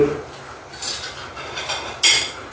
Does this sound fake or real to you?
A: real